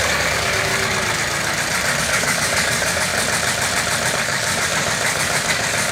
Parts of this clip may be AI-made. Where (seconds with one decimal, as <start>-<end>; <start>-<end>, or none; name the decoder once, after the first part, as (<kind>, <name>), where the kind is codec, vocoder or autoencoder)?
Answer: 0.0-0.7 (codec, DAC); 2.0-3.1; 4.1-5.9